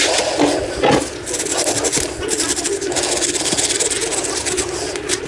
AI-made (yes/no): no